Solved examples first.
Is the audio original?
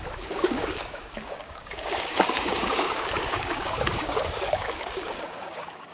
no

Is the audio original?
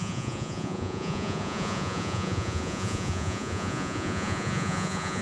no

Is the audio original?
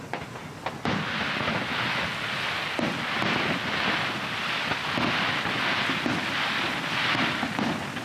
yes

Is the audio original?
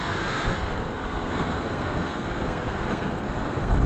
no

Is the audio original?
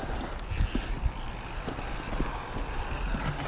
yes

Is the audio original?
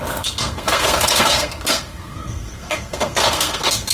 no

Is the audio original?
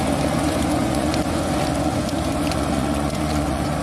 no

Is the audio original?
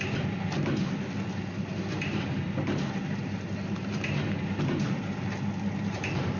yes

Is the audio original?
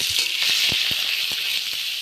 no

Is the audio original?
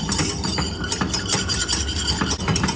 yes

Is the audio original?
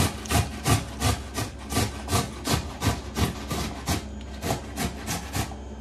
yes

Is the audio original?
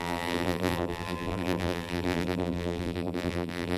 no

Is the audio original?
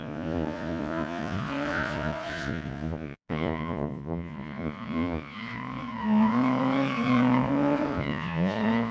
no